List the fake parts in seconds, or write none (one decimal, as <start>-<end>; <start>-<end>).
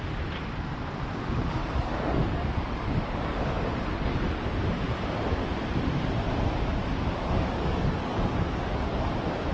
1.6-4.4; 7.2-9.1